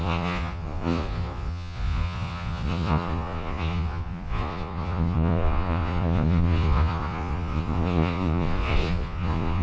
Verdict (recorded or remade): remade